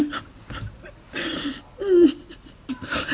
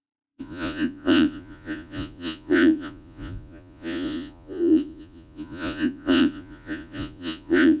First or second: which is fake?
second